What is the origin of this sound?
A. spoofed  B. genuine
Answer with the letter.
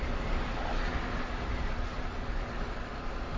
B